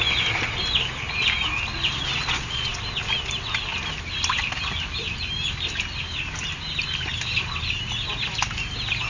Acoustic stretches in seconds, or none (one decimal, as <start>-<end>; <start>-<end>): 0.0-2.2; 2.8-9.1